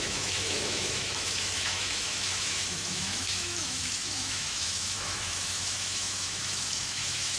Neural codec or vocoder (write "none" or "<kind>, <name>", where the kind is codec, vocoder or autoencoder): autoencoder, DAC-VAE